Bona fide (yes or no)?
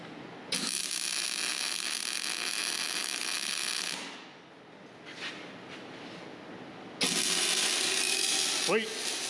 yes